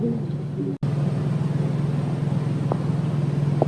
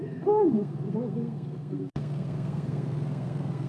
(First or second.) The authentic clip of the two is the first